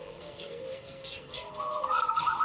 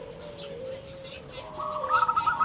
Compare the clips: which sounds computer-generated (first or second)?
first